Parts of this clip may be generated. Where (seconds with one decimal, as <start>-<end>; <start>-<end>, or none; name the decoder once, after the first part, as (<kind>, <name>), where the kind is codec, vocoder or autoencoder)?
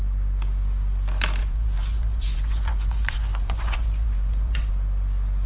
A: 1.4-4.7 (vocoder, Vocos)